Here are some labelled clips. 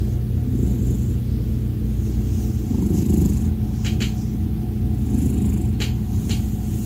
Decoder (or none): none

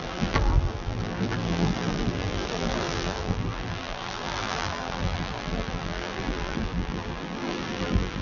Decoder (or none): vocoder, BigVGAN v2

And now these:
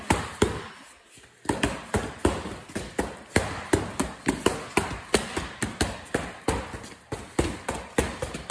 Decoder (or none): none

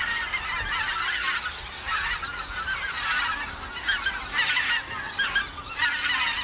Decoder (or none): none